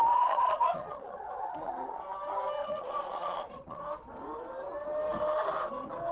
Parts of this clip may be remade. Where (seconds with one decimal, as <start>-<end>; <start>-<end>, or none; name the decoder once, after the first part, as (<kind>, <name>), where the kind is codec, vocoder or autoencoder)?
0.0-2.0 (vocoder, Vocos); 2.6-3.8